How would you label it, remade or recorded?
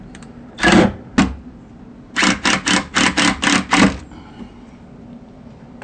recorded